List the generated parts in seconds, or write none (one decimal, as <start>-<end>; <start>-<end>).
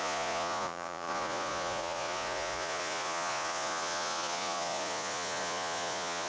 0.0-6.3